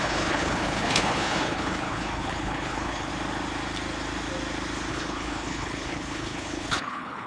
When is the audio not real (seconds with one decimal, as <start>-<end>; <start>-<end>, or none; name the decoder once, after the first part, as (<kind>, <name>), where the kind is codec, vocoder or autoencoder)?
0.0-3.1 (codec, HILCodec); 4.9-7.3